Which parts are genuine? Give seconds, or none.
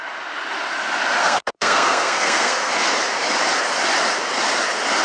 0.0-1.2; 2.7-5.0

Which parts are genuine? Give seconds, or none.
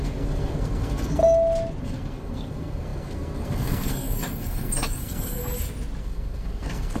1.2-1.8; 5.4-6.0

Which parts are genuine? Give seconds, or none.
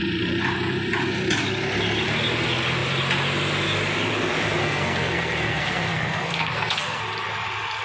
0.0-4.6; 7.0-7.8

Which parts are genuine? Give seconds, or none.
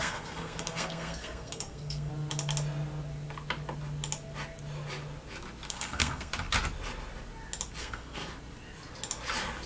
2.1-5.7; 6.3-7.8; 8.2-9.7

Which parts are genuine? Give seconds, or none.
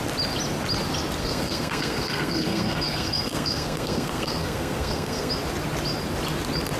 0.0-1.2; 5.3-6.8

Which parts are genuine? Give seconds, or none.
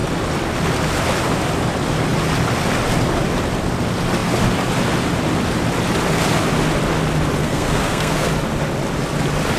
0.0-7.4; 8.3-9.6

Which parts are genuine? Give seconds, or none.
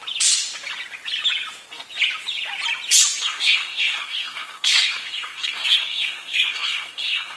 0.0-3.2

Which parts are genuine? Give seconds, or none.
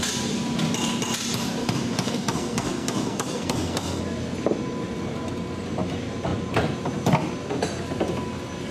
0.0-1.6; 4.0-8.7